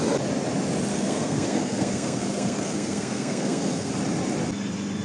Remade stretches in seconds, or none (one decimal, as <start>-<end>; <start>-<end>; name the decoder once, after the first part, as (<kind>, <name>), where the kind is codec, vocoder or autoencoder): 0.9-3.9 (codec, SNAC)